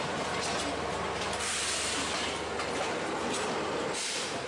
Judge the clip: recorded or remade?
recorded